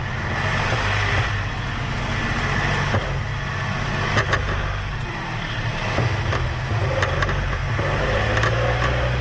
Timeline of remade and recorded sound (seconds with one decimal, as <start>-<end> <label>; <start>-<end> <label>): 0.0-5.1 recorded; 5.1-7.6 remade; 7.6-9.2 recorded